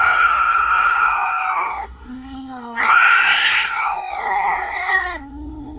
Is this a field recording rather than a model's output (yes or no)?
no